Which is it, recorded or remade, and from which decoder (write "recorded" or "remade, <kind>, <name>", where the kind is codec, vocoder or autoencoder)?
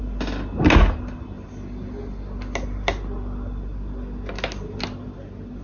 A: recorded